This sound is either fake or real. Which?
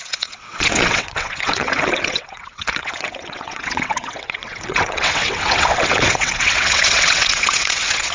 fake